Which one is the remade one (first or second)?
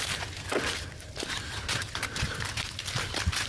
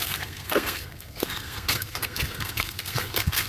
second